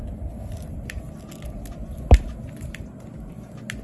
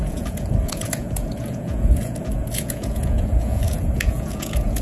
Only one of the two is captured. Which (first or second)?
first